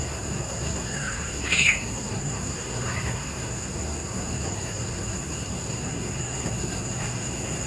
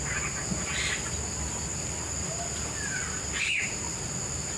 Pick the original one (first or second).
second